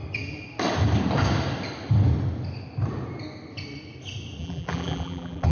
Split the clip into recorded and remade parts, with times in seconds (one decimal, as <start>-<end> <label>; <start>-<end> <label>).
0.0-4.4 recorded; 4.4-5.5 remade